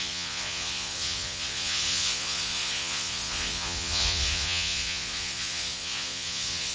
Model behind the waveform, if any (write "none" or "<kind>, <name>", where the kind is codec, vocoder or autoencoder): vocoder, Vocos